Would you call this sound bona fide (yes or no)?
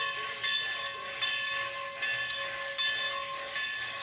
yes